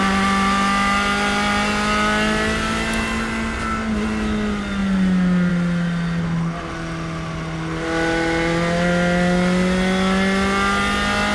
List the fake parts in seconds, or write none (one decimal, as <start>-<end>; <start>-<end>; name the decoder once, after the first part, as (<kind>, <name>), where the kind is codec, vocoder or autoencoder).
none